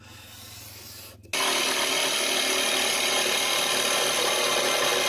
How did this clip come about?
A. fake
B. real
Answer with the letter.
B